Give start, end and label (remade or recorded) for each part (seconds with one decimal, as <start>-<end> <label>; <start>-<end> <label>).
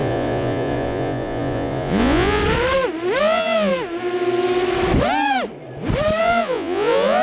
0.0-2.4 remade; 2.4-3.2 recorded; 3.2-3.7 remade; 3.7-6.2 recorded; 6.2-7.2 remade